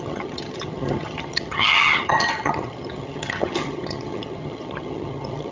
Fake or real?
fake